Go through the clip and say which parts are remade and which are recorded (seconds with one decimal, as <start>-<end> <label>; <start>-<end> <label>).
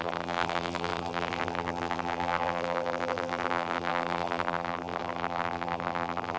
0.0-6.4 remade